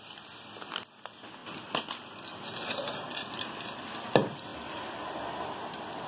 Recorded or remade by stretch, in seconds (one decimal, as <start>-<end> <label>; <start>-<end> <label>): 0.0-4.5 recorded; 4.5-5.1 remade; 5.1-6.1 recorded